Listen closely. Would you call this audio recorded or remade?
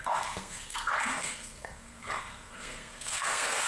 remade